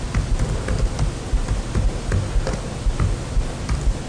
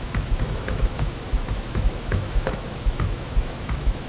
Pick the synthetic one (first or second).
second